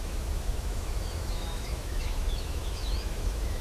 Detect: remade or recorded remade